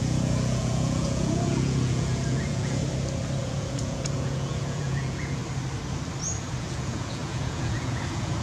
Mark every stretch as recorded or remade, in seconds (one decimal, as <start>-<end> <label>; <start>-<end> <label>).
0.0-2.8 remade; 2.8-3.4 recorded; 3.4-5.4 remade; 5.4-6.6 recorded; 6.6-8.4 remade